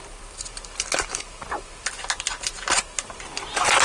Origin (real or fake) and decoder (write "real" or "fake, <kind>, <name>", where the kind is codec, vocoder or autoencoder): real